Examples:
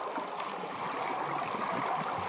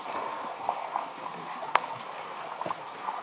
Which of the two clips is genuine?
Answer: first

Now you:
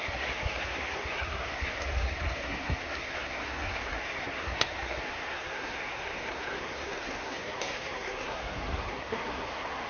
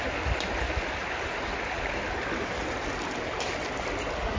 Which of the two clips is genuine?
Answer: second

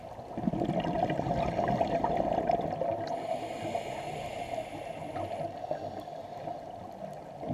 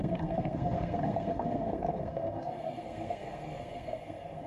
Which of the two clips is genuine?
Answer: first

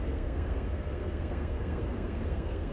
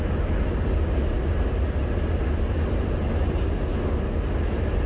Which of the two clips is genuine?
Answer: second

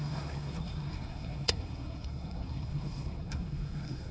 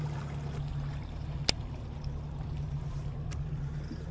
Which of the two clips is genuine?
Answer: second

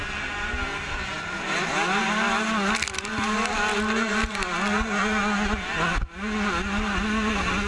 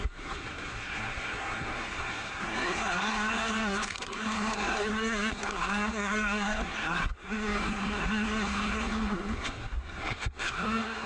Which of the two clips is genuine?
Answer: first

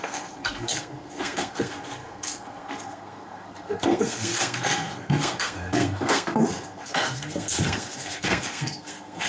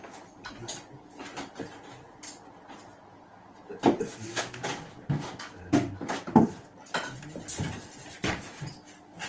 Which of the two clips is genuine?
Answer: second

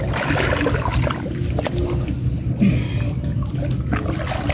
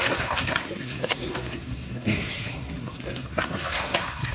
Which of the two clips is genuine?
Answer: first